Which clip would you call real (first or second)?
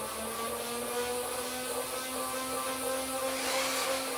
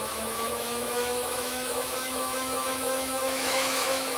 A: first